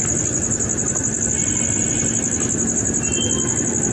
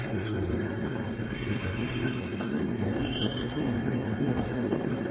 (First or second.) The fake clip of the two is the second